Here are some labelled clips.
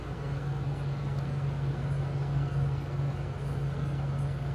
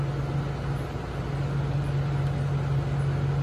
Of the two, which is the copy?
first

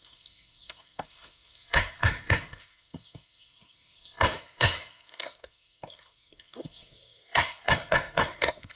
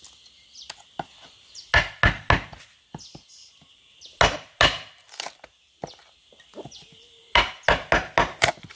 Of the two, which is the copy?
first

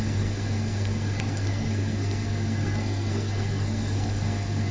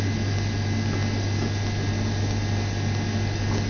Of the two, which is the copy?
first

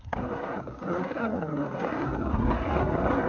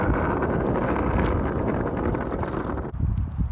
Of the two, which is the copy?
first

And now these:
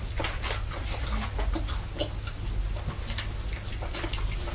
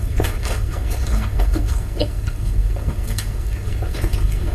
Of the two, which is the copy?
second